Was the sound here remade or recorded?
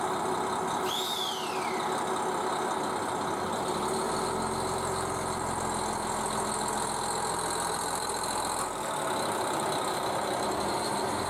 recorded